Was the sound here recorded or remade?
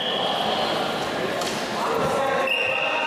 recorded